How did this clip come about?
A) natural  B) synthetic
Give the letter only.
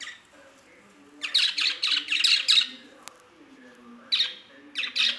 A